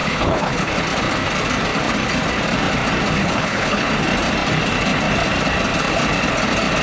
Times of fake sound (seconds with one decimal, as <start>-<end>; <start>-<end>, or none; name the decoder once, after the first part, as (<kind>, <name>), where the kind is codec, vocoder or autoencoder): 0.0-0.7 (codec, HILCodec); 3.2-3.9